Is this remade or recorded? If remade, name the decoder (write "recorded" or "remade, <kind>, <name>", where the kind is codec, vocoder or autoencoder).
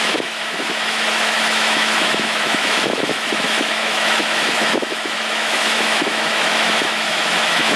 remade, autoencoder, DAC-VAE